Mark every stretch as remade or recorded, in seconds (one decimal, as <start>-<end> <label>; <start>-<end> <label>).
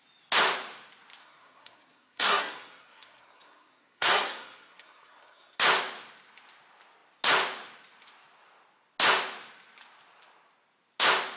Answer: 0.0-1.2 recorded; 1.2-5.6 remade; 5.6-11.4 recorded